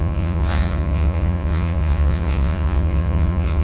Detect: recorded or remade remade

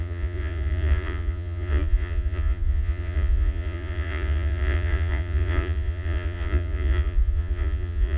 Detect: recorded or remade remade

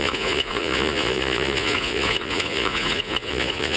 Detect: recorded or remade remade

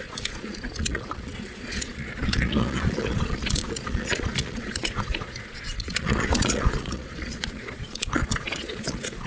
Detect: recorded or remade remade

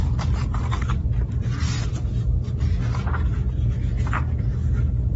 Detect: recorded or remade recorded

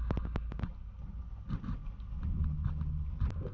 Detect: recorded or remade recorded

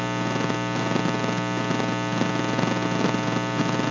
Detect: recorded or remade recorded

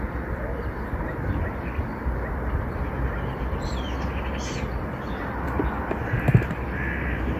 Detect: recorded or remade recorded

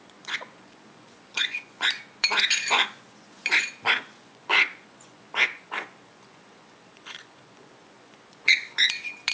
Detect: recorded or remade remade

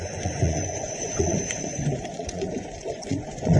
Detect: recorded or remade remade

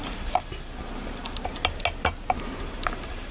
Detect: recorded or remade recorded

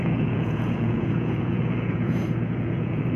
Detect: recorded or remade remade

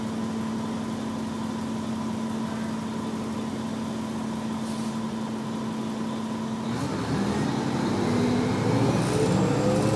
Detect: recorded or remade recorded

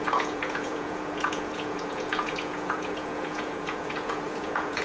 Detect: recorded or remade remade